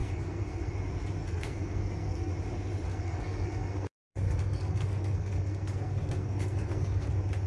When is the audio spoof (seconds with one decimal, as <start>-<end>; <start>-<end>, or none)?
0.0-0.7; 1.2-2.3; 2.9-7.1